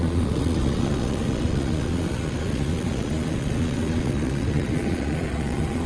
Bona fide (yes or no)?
no